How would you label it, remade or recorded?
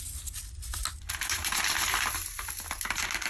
recorded